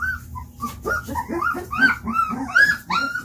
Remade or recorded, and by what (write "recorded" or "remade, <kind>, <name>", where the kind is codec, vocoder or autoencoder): recorded